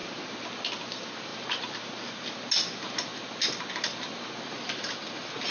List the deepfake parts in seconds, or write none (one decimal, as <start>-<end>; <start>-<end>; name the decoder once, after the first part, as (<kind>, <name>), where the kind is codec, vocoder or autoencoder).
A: none